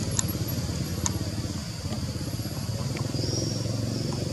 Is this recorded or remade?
recorded